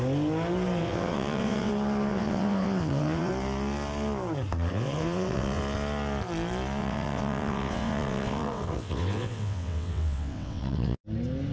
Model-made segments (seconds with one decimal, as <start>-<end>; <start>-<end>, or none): 0.8-1.7; 2.1-3.3; 4.7-5.6; 6.8-11.0